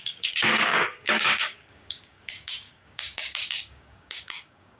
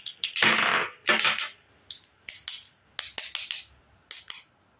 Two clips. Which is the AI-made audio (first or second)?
first